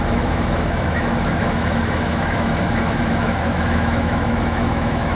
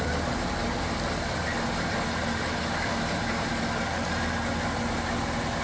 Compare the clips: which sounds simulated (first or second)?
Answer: first